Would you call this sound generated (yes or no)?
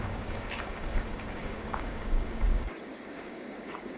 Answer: yes